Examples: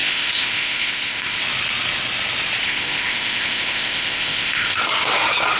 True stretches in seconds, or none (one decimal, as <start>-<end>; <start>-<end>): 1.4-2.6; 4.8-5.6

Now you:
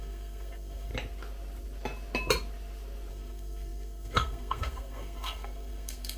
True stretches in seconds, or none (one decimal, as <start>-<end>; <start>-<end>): 0.9-3.1

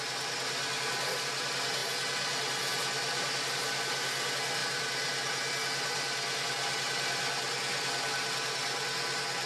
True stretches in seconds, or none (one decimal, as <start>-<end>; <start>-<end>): 0.0-9.5

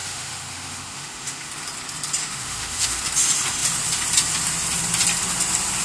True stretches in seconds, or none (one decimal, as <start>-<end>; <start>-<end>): 1.5-2.2; 3.0-5.8

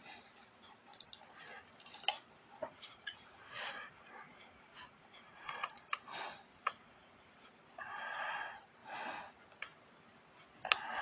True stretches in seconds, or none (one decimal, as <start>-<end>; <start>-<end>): 0.0-2.6; 6.0-6.5; 7.5-11.0

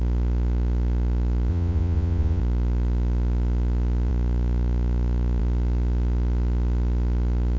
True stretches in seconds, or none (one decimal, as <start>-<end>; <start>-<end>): 0.0-1.5; 2.4-7.6

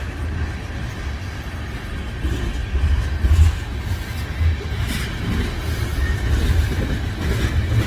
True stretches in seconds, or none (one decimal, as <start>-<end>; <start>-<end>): 0.0-7.9

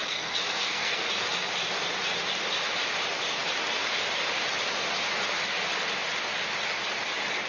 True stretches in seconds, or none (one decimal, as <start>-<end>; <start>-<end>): 1.0-7.5